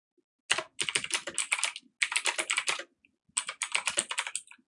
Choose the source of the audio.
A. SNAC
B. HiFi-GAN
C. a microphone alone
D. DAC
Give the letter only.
C